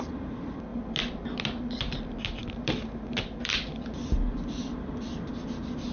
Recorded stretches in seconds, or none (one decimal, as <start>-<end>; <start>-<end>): 0.0-5.9